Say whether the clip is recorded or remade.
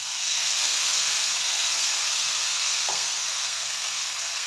remade